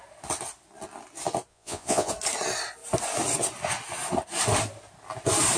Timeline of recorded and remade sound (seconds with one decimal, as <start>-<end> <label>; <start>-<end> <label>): 0.0-1.5 recorded; 1.5-2.1 remade; 2.1-5.6 recorded